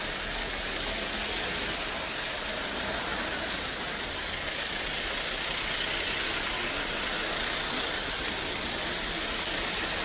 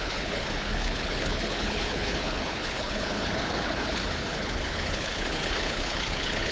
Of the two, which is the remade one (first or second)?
second